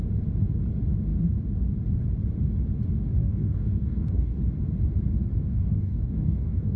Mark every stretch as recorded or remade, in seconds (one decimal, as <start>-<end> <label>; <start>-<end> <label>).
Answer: 0.0-3.2 recorded; 3.2-4.4 remade; 4.4-5.5 recorded; 5.5-6.8 remade